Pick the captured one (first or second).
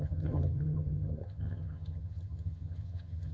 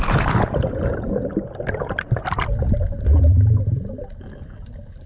second